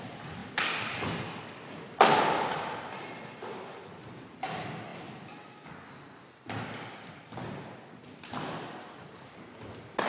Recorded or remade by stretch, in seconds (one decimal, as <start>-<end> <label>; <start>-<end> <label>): 0.0-10.1 recorded